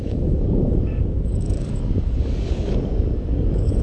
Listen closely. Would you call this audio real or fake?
fake